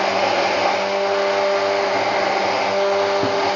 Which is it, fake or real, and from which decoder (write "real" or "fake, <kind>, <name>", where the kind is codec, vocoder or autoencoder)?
real